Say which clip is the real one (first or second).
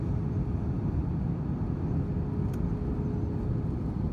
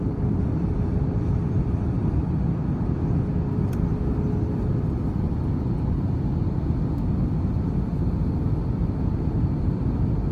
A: first